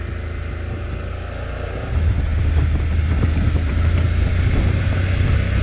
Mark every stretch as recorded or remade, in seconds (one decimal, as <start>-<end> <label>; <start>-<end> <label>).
0.0-5.6 recorded